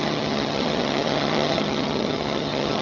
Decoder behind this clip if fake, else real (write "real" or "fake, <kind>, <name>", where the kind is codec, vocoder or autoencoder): fake, vocoder, HiFi-GAN